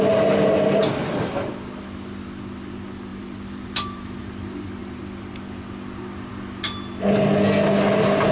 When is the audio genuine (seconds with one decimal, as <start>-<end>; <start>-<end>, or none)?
0.0-3.1; 4.2-8.3